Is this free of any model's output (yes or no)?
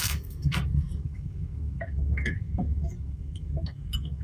no